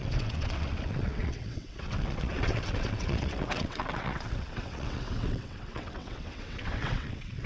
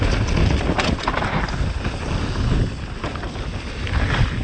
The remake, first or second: first